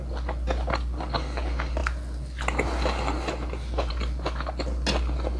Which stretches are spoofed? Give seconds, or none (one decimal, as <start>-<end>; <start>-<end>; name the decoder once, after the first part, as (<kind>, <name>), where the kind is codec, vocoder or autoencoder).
none